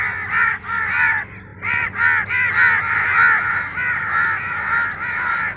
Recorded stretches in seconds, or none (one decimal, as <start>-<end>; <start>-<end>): 0.0-5.6